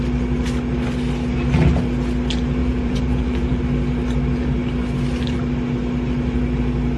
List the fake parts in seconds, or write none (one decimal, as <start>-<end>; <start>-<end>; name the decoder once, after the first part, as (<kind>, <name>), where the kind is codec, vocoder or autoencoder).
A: 2.6-3.6 (vocoder, Vocos)